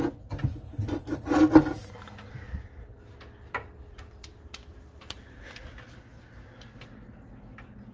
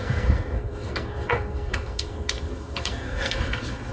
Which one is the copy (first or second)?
second